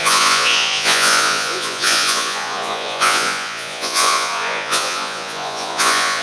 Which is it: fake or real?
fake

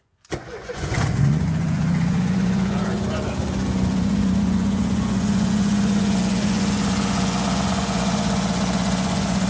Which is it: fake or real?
fake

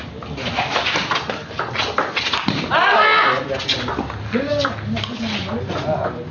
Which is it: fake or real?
real